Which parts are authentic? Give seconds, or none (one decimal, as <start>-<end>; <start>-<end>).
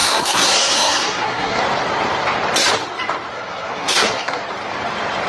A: 1.6-3.3; 4.4-5.3